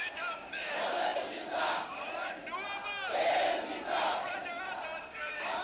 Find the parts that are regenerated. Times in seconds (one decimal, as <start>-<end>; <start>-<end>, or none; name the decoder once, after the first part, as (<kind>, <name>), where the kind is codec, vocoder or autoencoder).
0.0-2.4 (codec, DAC); 5.0-5.6